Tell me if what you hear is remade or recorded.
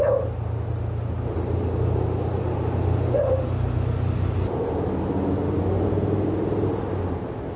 recorded